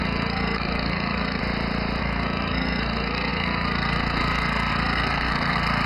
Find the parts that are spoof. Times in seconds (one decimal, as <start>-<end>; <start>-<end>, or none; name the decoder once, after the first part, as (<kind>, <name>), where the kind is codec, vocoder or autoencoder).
0.0-1.4 (codec, SNAC); 2.0-5.9